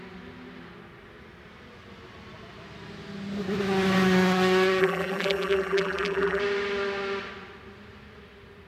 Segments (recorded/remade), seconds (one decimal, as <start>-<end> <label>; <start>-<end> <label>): 0.0-4.8 recorded; 4.8-6.4 remade; 6.4-8.7 recorded